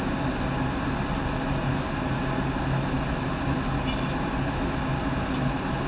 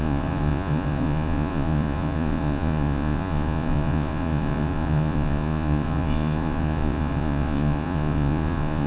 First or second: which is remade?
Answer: second